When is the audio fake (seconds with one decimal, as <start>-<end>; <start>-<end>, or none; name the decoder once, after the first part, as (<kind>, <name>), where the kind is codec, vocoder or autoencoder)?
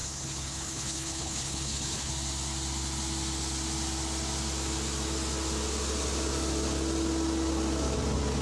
0.0-2.1 (codec, HILCodec)